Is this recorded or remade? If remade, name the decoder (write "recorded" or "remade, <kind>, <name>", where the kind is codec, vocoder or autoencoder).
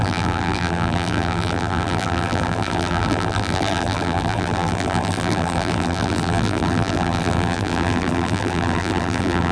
remade, vocoder, BigVGAN v2